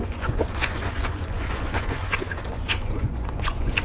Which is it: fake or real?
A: fake